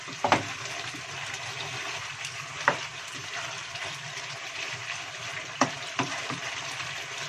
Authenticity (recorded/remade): remade